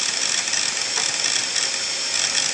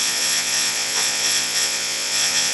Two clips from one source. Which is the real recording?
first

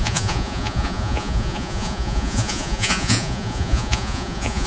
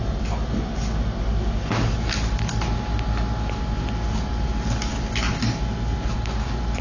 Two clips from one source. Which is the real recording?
second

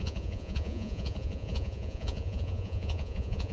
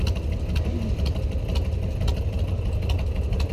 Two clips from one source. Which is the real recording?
second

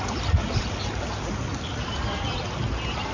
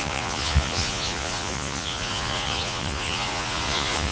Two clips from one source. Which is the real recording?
first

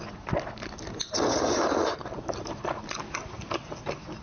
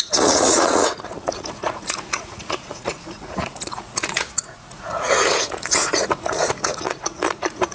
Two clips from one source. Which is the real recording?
first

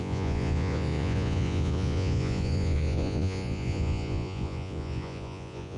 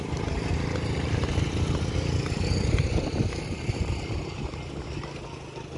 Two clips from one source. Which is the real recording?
second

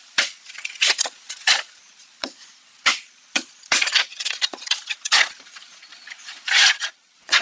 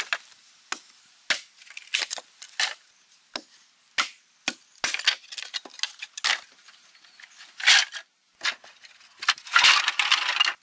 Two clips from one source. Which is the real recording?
second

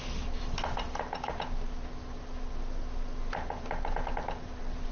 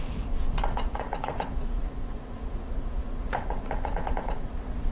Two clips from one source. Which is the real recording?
first